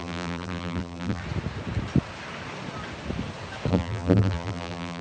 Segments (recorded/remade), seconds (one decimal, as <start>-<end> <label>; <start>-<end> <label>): 0.0-1.2 remade; 1.2-3.7 recorded; 3.7-5.0 remade